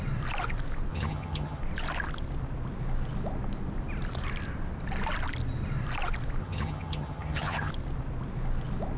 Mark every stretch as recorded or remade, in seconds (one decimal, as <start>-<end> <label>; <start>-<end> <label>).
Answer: 0.0-0.9 recorded; 0.9-1.6 remade; 1.6-6.4 recorded; 6.4-7.7 remade; 7.7-9.0 recorded